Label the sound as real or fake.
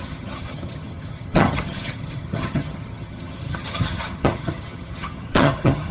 fake